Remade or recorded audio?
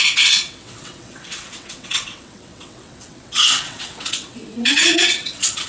remade